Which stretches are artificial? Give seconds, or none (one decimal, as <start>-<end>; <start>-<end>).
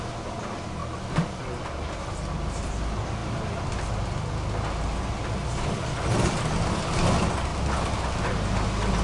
3.2-3.8; 7.5-8.0